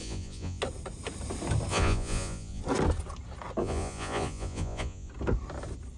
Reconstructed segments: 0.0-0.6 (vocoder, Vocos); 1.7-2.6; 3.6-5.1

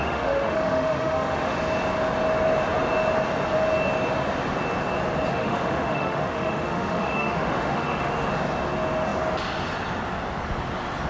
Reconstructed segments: 0.0-1.6 (autoencoder, DAC-VAE); 5.3-8.1